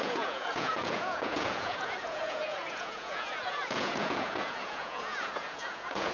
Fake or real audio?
fake